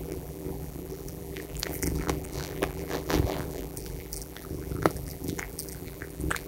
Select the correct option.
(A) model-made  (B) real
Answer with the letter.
A